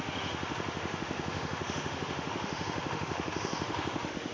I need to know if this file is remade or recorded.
remade